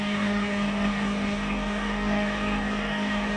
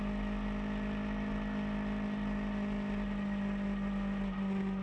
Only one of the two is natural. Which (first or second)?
second